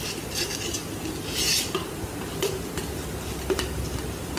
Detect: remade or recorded recorded